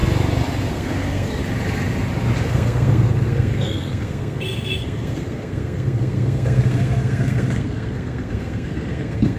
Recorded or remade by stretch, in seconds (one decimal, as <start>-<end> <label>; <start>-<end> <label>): 0.0-0.7 recorded; 0.7-1.4 remade; 1.4-2.4 recorded; 2.4-9.4 remade